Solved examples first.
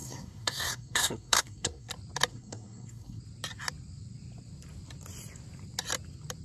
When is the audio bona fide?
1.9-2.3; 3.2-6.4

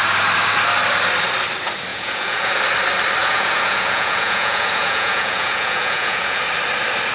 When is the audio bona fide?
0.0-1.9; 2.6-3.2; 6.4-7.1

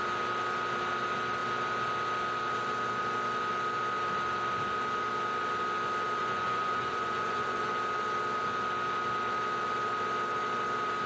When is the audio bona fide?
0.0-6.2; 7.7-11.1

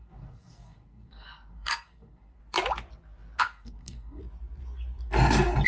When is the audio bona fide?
2.4-3.4; 4.2-5.7

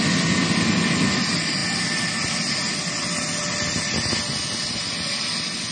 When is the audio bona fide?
0.0-5.7